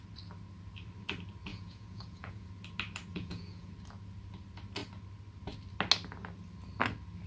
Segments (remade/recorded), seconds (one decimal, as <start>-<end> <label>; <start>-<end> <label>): 0.0-1.5 recorded; 1.5-2.5 remade; 2.5-3.1 recorded; 3.1-3.7 remade; 3.7-7.3 recorded